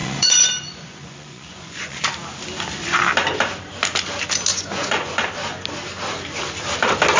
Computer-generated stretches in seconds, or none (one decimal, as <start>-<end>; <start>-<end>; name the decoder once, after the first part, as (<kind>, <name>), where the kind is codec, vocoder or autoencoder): 0.0-2.0 (vocoder, Vocos); 4.5-5.2